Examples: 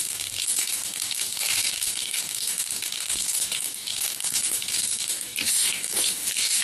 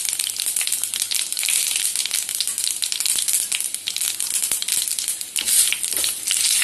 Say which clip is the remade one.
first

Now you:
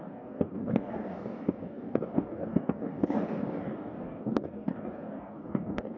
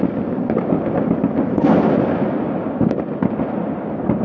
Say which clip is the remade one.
first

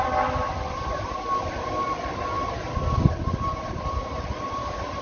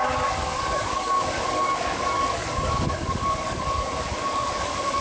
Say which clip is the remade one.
second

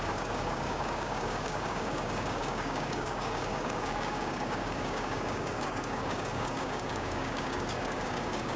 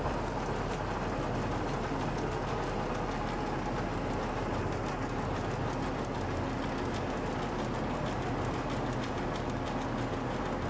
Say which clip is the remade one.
first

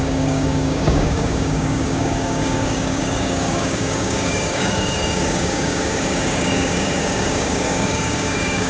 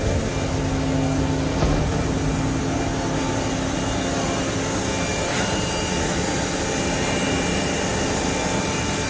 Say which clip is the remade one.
first